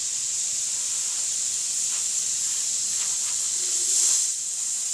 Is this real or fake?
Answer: real